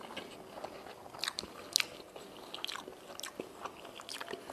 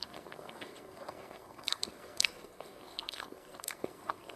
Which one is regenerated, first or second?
second